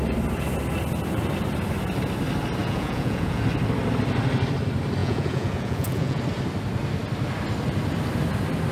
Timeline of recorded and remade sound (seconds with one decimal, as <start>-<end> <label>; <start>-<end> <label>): 0.0-2.6 recorded; 2.6-3.4 remade; 3.4-5.0 recorded; 5.0-6.2 remade; 6.2-8.7 recorded